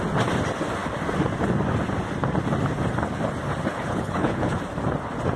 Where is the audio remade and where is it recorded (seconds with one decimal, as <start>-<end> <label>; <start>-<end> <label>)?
0.0-3.7 recorded; 3.7-4.6 remade; 4.6-5.4 recorded